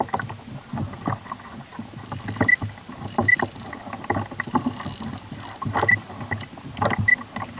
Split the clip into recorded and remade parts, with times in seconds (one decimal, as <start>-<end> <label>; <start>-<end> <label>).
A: 0.0-7.6 recorded